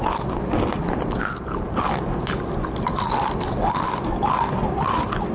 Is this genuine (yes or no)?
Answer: yes